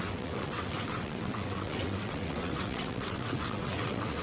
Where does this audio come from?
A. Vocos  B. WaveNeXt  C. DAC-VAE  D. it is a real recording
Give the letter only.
B